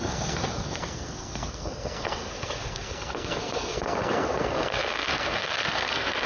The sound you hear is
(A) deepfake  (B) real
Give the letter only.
A